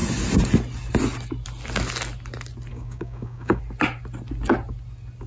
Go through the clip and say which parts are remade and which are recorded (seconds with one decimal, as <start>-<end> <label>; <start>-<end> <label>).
0.0-2.7 recorded; 2.7-3.6 remade; 3.6-5.3 recorded